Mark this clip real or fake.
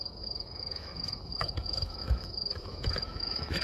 fake